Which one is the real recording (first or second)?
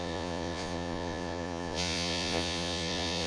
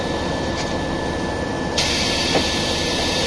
second